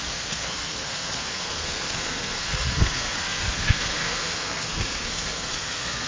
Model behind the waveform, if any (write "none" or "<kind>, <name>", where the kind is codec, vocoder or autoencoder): codec, SNAC